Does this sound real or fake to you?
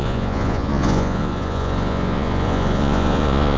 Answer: fake